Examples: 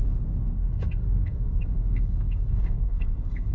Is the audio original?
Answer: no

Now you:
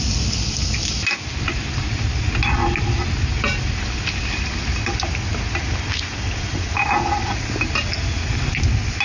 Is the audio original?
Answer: yes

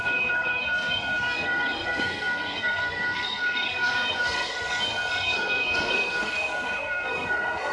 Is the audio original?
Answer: no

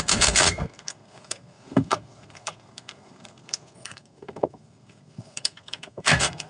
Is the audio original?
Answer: no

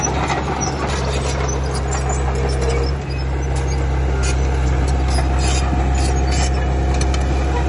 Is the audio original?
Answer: yes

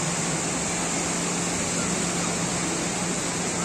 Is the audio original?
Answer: yes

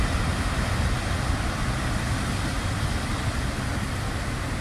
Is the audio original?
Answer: yes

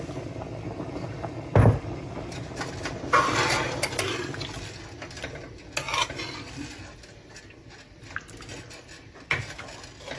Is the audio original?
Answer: yes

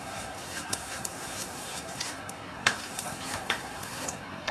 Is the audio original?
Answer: no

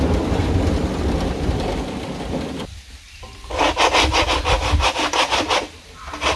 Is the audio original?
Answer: yes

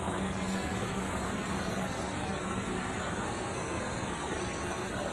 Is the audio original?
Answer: no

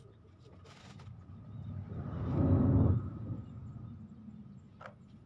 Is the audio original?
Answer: yes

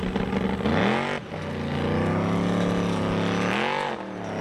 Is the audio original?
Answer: yes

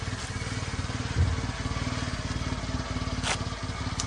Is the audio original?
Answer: yes